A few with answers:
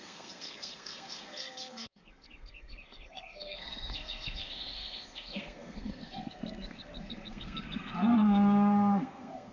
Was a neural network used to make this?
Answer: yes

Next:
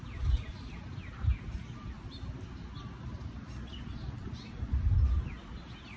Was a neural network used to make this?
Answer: no